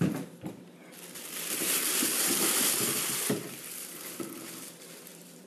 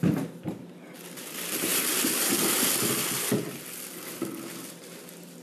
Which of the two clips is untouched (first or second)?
second